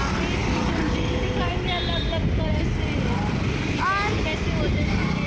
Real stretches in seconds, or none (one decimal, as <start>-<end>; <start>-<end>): 0.0-0.4; 1.5-5.3